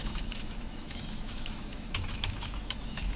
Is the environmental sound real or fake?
fake